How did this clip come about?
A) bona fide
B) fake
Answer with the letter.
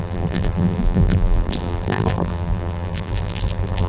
B